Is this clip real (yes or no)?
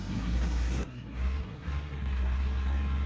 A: no